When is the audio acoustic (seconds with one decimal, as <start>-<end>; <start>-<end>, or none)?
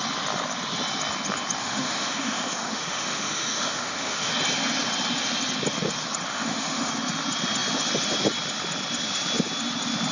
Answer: 0.0-1.6; 4.3-6.3; 6.9-10.1